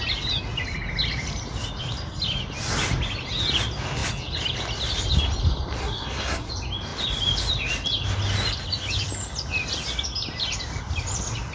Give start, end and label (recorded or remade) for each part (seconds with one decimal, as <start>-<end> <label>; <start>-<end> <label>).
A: 0.0-5.8 recorded; 5.8-6.5 remade; 6.5-11.5 recorded